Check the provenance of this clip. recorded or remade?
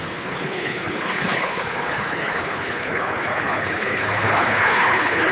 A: remade